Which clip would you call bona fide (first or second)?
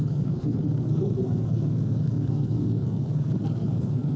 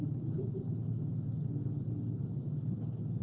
second